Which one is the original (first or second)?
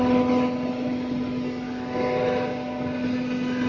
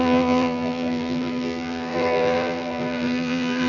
first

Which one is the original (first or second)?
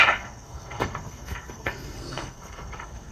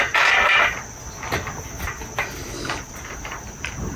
second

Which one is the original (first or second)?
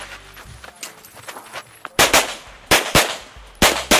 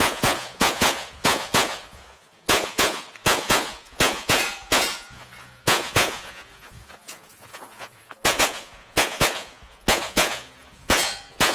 first